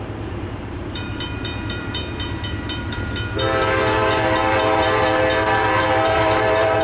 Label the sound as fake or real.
fake